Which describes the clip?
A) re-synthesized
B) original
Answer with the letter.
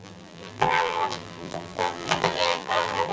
A